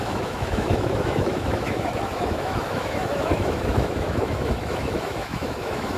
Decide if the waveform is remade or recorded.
remade